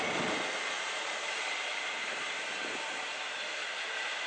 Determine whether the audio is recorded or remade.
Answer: recorded